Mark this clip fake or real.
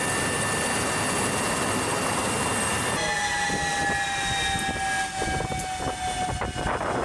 real